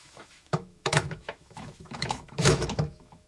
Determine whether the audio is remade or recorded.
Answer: remade